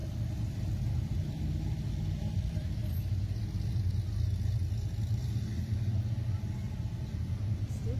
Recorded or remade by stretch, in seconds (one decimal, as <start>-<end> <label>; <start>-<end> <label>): 0.0-2.8 remade; 2.8-7.6 recorded; 7.6-8.0 remade